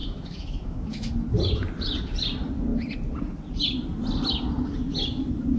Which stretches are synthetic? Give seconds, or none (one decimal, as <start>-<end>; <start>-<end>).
0.0-1.1